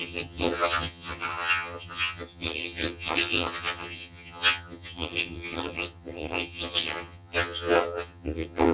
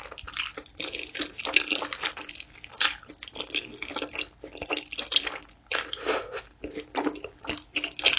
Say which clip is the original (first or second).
second